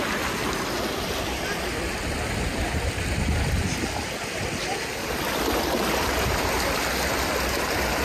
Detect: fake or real real